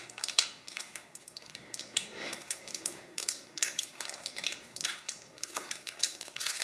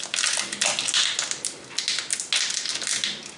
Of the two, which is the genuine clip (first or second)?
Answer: second